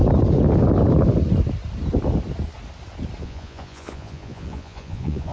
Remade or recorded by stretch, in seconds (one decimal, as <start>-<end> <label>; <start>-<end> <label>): 0.0-3.2 recorded; 3.2-5.3 remade